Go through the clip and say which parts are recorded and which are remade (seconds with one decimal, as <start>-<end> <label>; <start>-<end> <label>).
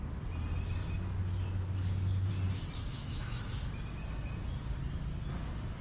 0.0-2.9 recorded; 2.9-3.4 remade; 3.4-5.8 recorded